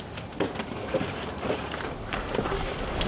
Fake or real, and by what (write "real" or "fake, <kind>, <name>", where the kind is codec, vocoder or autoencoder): real